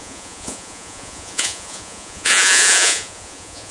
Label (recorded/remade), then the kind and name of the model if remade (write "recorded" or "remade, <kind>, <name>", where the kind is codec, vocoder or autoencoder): remade, vocoder, Vocos